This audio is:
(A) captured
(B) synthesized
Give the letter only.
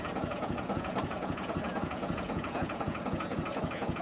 B